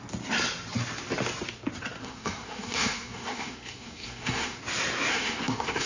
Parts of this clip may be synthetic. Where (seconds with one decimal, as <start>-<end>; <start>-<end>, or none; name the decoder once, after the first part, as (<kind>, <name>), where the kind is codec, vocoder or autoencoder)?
2.0-4.6 (codec, SNAC); 5.1-5.9